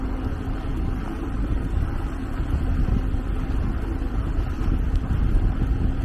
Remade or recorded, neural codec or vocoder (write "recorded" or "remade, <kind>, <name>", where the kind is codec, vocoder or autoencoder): recorded